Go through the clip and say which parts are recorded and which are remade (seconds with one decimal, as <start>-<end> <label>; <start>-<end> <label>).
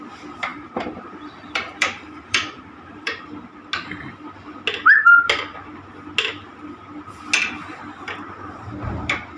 0.0-0.5 recorded; 0.5-3.2 remade; 3.2-9.4 recorded